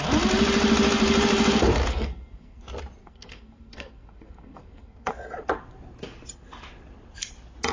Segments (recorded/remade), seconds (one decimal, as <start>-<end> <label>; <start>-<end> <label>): 0.0-1.9 recorded; 1.9-2.6 remade; 2.6-3.0 recorded; 3.0-5.1 remade; 5.1-7.7 recorded